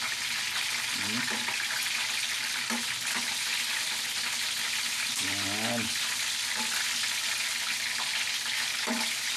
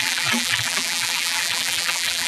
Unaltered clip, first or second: first